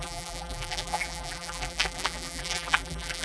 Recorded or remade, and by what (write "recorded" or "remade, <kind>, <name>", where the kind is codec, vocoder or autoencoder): remade, vocoder, BigVGAN v2